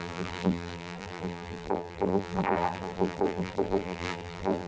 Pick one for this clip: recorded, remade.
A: remade